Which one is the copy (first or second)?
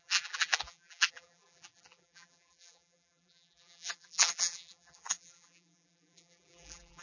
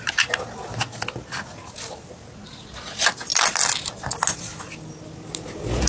first